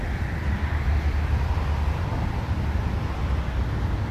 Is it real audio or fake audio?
real